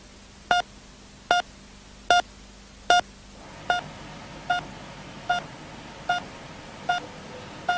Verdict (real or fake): real